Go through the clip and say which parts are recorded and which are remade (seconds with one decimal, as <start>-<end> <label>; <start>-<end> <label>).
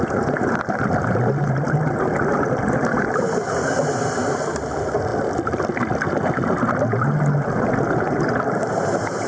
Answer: 0.0-9.3 recorded